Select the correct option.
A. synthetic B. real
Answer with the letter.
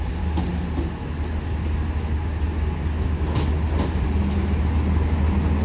B